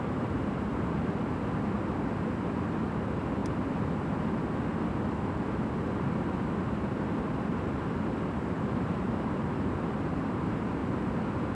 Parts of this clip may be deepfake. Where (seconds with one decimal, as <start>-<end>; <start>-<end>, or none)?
0.0-0.7; 2.8-3.4; 6.7-10.8